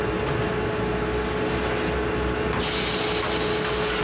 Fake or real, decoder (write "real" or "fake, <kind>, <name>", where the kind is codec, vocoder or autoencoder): real